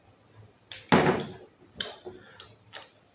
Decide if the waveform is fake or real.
real